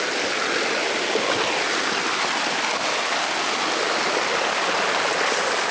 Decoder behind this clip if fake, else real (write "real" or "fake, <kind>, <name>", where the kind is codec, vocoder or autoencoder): real